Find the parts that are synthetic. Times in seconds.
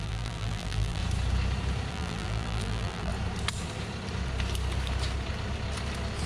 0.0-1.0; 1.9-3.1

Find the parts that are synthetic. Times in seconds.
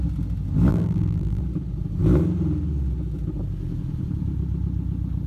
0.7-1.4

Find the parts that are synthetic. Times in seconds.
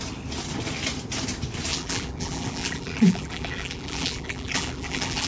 1.7-5.3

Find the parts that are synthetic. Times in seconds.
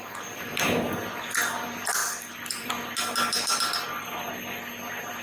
2.0-2.7; 3.3-4.3